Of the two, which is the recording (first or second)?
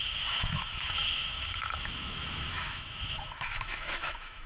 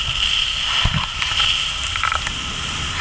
second